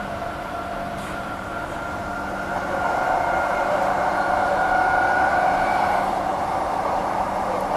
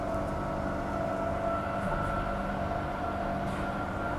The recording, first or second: second